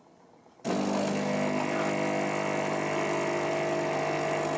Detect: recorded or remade recorded